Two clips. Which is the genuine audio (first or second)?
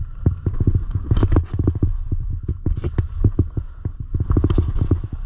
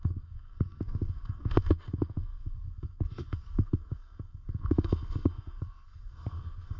first